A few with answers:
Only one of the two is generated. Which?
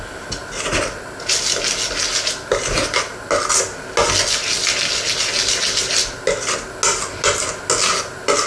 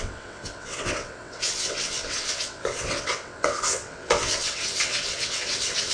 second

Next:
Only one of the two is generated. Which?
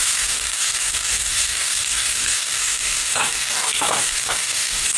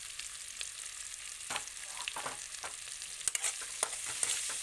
first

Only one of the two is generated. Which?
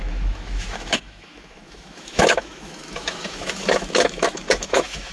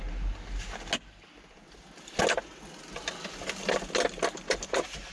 first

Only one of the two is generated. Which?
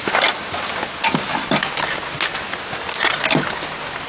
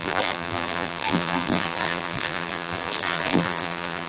second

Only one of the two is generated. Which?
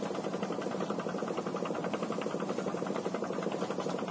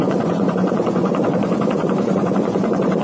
second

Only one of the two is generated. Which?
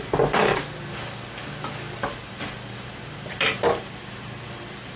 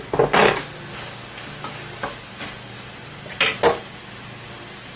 first